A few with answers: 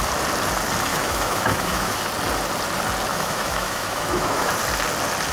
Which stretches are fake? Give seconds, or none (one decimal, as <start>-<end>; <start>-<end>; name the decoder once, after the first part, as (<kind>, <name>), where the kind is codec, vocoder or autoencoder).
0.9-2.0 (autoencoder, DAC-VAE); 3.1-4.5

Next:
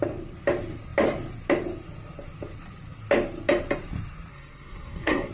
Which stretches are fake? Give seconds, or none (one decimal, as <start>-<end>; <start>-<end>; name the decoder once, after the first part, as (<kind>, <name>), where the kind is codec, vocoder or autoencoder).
4.3-5.3 (codec, SNAC)

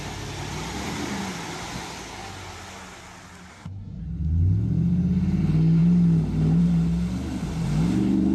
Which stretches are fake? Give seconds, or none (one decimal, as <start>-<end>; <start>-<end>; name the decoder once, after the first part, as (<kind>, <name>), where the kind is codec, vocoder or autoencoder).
3.5-4.0 (codec, SNAC)

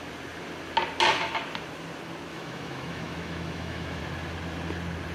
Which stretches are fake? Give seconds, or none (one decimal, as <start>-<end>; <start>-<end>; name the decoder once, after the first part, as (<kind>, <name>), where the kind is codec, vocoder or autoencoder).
2.3-4.0 (autoencoder, DAC-VAE)

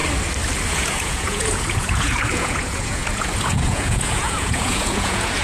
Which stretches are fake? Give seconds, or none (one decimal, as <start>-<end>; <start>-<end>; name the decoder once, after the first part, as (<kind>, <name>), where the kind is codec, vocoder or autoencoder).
0.7-5.4 (vocoder, Vocos)